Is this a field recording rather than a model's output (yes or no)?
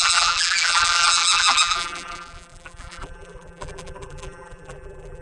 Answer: no